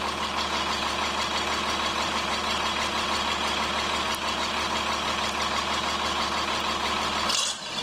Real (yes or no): yes